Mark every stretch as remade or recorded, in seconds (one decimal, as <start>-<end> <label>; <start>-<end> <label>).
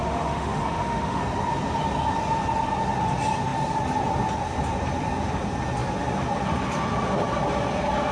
0.0-1.2 remade; 1.2-8.1 recorded